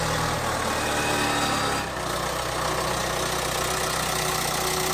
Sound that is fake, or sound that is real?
real